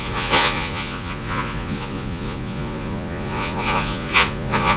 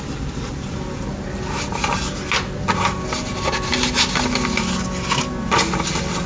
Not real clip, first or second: first